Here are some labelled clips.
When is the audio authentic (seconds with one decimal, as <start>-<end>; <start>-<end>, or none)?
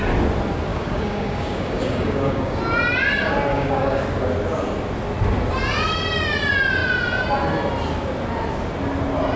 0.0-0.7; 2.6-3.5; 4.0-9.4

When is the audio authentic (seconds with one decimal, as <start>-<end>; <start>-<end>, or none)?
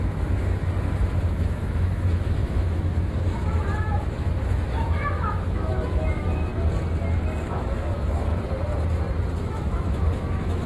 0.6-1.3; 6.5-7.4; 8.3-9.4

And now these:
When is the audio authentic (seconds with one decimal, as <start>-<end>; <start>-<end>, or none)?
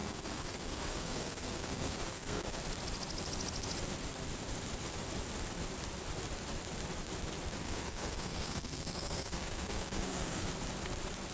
2.6-7.6; 10.5-11.3